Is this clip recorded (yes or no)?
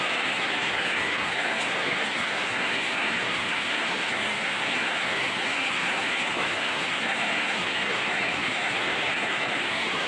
no